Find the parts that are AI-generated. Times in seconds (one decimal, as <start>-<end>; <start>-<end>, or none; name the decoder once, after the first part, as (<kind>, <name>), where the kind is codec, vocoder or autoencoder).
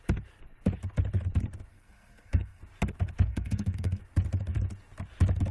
1.7-2.6 (codec, SNAC); 3.3-4.0